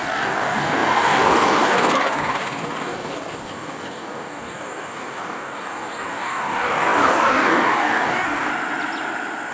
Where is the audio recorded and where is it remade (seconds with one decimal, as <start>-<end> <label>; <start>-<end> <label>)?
0.0-8.5 remade; 8.5-9.5 recorded